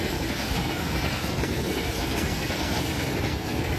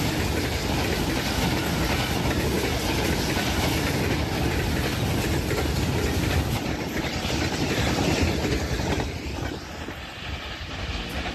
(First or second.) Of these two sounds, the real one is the second